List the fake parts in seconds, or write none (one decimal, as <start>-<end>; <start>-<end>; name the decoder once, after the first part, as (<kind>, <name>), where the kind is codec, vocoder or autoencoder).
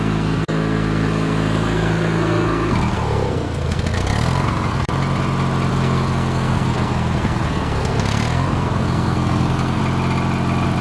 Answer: 0.0-4.9 (codec, SNAC); 5.7-9.8